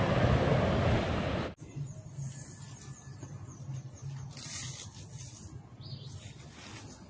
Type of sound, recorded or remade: recorded